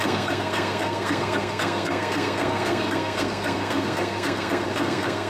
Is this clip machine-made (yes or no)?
yes